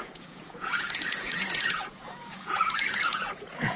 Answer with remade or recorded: remade